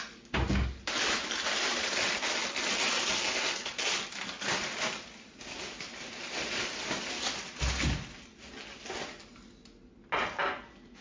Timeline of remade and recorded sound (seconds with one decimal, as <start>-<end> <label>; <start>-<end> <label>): 0.0-11.0 recorded